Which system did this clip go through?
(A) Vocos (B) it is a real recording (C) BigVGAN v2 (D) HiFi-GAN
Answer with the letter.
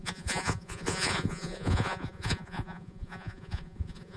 A